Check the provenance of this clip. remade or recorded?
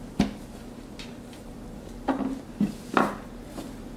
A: recorded